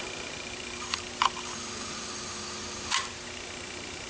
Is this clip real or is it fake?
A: real